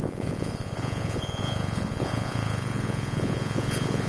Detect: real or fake fake